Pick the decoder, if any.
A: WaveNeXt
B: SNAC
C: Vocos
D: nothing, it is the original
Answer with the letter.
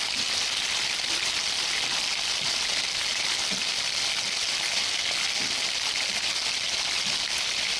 D